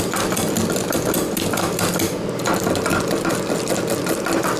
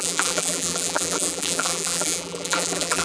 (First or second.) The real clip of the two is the first